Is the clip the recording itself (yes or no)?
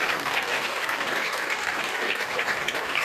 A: no